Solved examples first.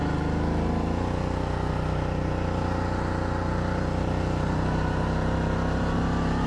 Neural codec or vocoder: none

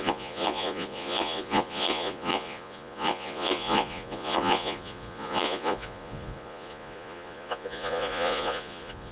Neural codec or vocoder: vocoder, Vocos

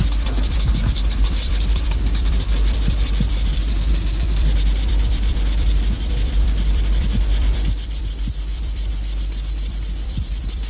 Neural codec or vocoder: vocoder, BigVGAN v2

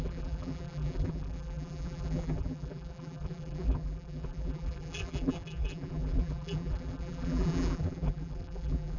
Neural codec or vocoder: vocoder, BigVGAN v2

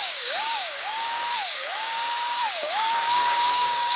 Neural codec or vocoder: codec, DAC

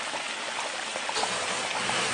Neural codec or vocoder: none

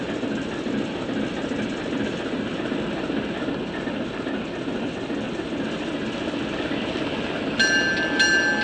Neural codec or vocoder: none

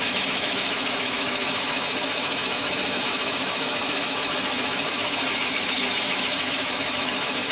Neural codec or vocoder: autoencoder, DAC-VAE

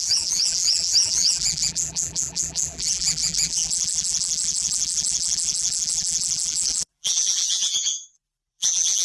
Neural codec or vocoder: vocoder, BigVGAN v2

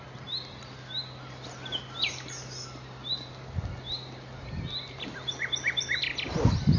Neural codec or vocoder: none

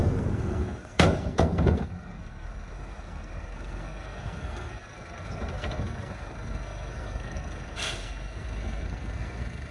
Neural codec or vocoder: codec, SNAC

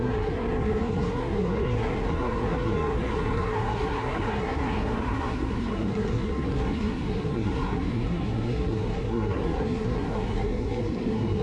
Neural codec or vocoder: codec, SNAC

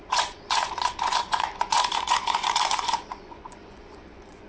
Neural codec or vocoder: vocoder, Vocos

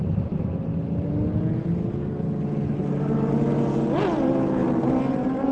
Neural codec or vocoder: none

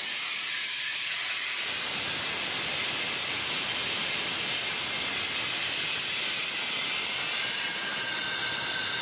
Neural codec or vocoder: none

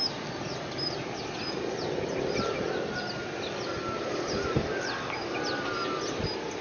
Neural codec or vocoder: none